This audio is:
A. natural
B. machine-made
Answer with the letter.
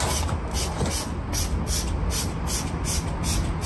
A